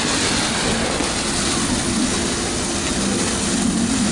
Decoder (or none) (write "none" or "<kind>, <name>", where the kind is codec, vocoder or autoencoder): none